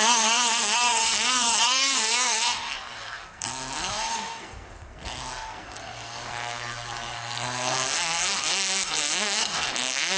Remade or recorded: remade